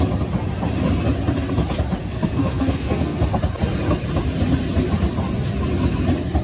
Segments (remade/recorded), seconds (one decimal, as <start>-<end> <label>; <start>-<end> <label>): 0.0-2.0 recorded; 2.0-3.2 remade; 3.2-6.4 recorded